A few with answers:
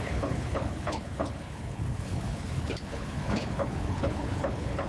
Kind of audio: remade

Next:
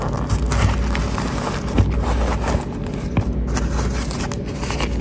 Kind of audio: recorded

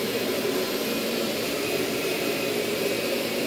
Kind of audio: remade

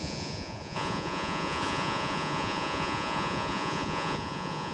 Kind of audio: remade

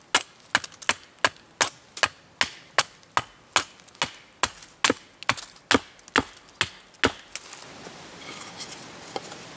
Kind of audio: recorded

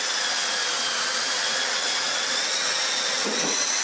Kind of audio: remade